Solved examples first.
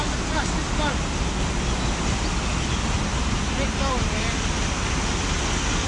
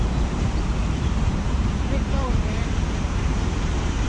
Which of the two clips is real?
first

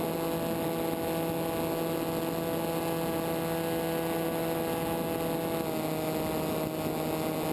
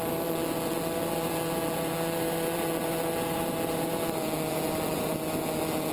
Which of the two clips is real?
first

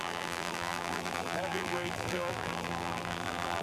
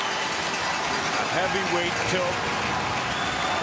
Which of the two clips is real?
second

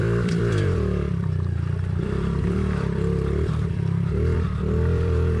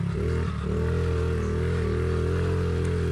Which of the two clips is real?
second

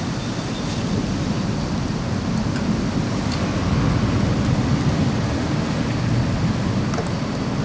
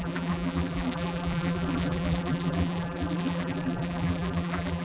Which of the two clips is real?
first